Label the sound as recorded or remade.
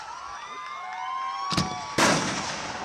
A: recorded